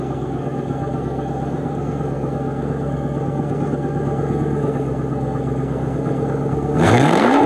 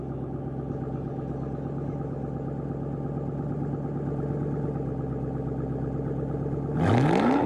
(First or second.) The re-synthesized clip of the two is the first